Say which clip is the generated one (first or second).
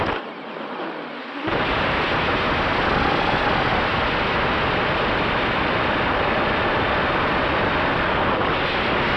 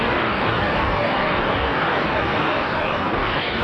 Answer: second